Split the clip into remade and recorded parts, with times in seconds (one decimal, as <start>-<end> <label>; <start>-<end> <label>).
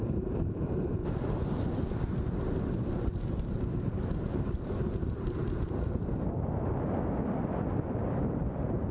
0.0-1.0 remade; 1.0-2.7 recorded; 2.7-5.4 remade; 5.4-8.0 recorded; 8.0-8.9 remade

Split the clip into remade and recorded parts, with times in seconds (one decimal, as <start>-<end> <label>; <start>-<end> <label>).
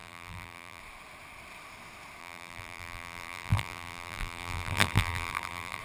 0.0-0.8 remade; 0.8-2.2 recorded; 2.2-5.8 remade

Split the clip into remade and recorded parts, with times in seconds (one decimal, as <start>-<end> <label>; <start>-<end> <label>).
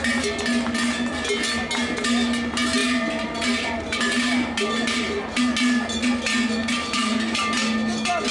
0.0-2.8 recorded; 2.8-5.4 remade; 5.4-6.6 recorded; 6.6-7.4 remade; 7.4-8.3 recorded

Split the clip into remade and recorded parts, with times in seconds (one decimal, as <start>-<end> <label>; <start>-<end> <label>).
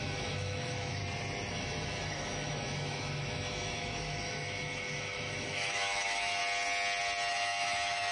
0.0-1.0 remade; 1.0-1.5 recorded; 1.5-6.4 remade; 6.4-7.3 recorded; 7.3-8.1 remade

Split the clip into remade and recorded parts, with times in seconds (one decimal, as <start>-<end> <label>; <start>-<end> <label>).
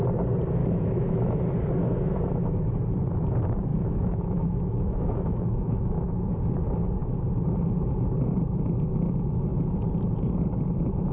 0.0-0.6 recorded; 0.6-1.4 remade; 1.4-3.7 recorded; 3.7-6.3 remade; 6.3-11.1 recorded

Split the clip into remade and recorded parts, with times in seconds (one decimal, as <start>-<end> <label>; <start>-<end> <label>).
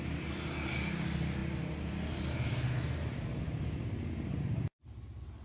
0.0-5.4 recorded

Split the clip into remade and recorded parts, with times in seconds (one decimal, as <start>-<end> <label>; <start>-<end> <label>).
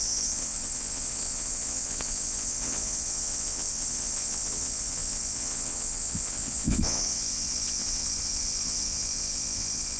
0.0-10.0 remade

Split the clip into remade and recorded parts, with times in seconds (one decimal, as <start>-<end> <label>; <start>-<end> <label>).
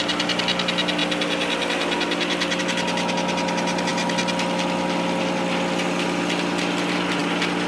0.0-7.7 recorded